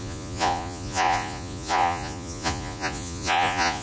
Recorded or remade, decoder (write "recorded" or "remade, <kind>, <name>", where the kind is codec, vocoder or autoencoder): remade, vocoder, Vocos